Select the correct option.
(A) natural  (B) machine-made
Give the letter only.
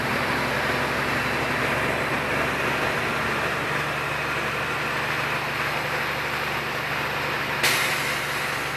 A